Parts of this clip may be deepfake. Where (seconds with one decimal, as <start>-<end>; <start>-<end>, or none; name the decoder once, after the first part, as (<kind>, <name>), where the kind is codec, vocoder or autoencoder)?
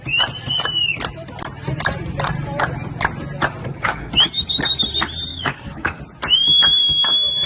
3.6-4.1 (codec, DAC); 5.3-6.0; 6.8-7.5